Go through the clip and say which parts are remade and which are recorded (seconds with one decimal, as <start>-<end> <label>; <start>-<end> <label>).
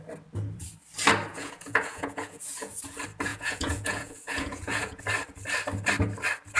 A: 0.0-1.3 recorded; 1.3-2.7 remade; 2.7-3.3 recorded; 3.3-5.0 remade; 5.0-6.6 recorded